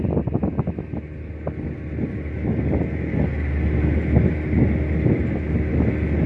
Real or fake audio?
real